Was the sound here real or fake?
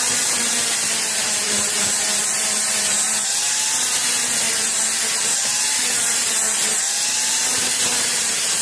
fake